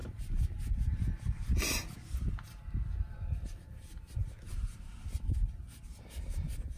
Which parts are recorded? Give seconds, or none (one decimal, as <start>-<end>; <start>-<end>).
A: 0.0-6.8